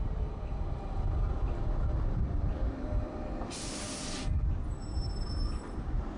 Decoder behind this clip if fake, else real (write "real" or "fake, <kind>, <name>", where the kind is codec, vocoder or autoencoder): fake, vocoder, BigVGAN v2